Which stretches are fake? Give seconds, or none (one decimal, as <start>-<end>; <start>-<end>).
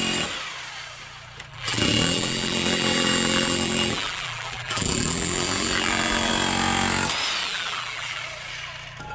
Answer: 1.5-6.3; 7.4-8.2